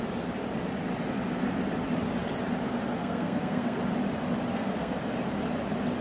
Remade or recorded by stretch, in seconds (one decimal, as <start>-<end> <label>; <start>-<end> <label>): 0.0-3.0 recorded; 3.0-3.8 remade; 3.8-4.5 recorded; 4.5-5.0 remade; 5.0-6.0 recorded